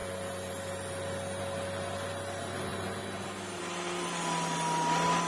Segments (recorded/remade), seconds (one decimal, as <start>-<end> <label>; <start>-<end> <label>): 0.0-5.3 recorded